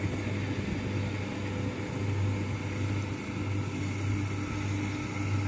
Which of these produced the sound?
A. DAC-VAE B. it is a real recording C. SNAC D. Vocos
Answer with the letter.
B